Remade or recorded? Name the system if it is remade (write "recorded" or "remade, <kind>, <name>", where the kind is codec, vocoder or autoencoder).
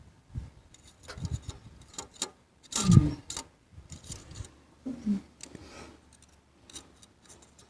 recorded